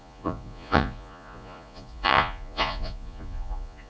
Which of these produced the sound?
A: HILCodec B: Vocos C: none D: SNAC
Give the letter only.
B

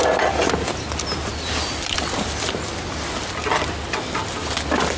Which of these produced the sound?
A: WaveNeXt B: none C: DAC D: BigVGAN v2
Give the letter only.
B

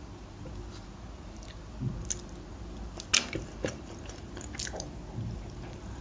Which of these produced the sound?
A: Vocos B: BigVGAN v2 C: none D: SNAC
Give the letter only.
C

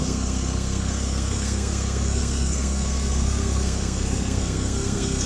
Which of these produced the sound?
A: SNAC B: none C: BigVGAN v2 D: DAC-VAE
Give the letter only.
A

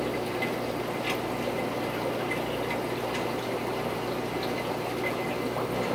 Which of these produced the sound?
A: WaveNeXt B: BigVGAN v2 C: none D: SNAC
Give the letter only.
C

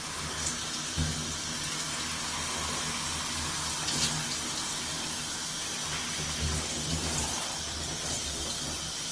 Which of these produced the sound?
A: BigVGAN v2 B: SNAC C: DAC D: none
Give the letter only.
D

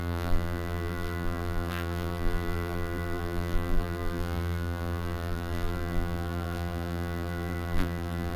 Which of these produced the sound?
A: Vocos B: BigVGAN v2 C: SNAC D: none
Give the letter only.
B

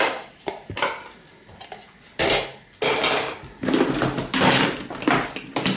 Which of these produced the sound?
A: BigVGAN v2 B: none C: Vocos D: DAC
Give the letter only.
B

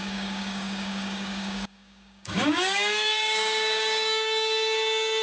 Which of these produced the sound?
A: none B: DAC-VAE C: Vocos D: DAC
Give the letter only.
D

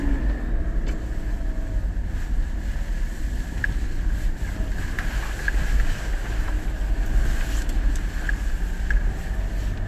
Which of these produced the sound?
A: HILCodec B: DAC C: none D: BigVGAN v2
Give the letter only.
C